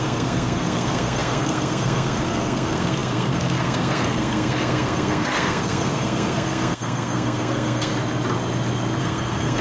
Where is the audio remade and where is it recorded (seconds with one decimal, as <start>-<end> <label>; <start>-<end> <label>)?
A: 0.0-7.9 remade; 7.9-9.0 recorded; 9.0-9.6 remade